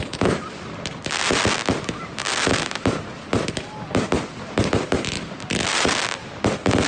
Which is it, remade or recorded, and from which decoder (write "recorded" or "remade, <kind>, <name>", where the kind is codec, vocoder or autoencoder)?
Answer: recorded